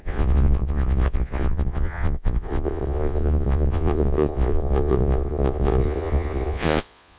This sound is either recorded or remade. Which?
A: remade